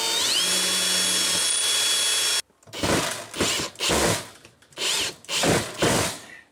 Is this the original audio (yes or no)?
yes